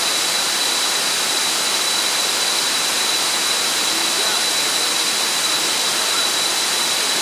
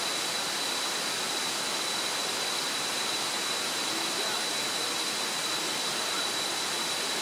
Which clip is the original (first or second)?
second